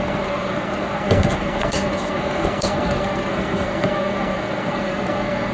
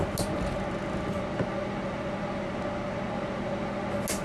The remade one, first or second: first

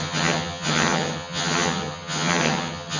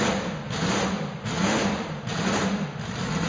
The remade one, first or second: first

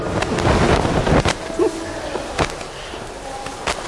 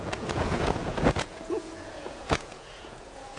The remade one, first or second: second